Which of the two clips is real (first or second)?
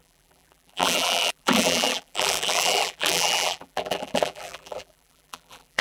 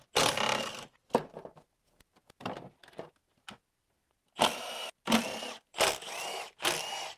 second